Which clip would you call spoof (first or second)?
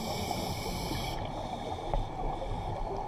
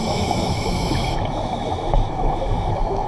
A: second